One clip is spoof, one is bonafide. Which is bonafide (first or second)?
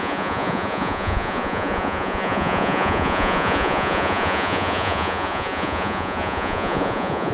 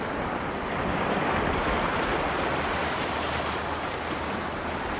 second